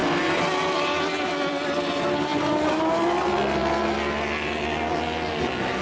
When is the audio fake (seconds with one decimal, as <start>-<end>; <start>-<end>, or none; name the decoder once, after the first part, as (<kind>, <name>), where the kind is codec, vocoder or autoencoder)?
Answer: none

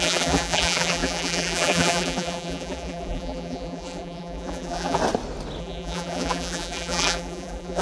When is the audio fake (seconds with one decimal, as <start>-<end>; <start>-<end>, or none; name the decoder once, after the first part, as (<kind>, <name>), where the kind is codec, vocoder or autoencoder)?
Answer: 0.0-5.0 (vocoder, BigVGAN v2); 5.6-7.8

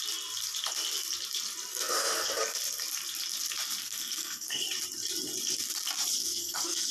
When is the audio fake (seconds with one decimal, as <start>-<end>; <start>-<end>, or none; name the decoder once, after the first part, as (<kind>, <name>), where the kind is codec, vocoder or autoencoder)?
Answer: 1.7-2.3 (codec, SNAC); 3.8-4.6; 6.2-6.9

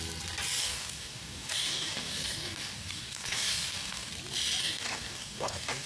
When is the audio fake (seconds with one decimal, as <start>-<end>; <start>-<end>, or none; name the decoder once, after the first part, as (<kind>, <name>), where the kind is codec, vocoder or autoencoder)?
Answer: 0.6-4.1 (codec, DAC); 4.6-5.9

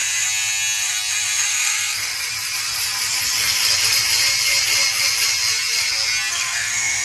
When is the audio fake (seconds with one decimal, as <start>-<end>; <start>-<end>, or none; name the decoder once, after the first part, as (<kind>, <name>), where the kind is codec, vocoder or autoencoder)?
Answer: 1.5-2.1 (codec, SNAC); 6.3-7.0

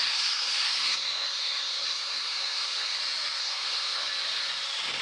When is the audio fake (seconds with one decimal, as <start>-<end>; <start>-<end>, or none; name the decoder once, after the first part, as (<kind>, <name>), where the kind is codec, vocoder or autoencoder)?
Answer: 0.0-3.0 (codec, SNAC); 3.4-4.1